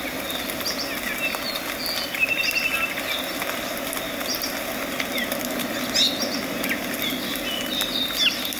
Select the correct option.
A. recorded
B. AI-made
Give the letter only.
A